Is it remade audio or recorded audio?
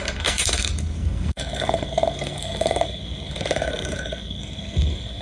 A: remade